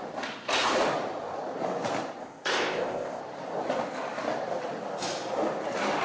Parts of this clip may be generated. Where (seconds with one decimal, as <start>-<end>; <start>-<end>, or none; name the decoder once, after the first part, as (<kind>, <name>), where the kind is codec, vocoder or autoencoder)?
2.2-3.2 (codec, ZipCodec)